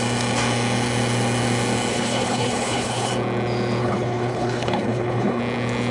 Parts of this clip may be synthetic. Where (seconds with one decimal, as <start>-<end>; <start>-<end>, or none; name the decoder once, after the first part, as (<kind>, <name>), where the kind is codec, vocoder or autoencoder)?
1.9-3.1 (codec, HILCodec); 3.8-5.4